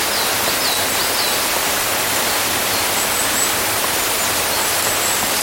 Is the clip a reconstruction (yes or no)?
no